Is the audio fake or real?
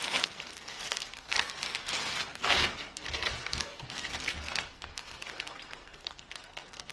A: fake